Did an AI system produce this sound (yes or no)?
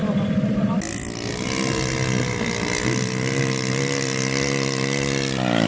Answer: no